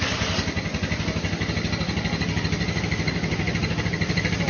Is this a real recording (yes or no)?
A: yes